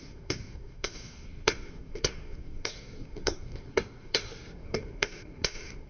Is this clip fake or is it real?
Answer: fake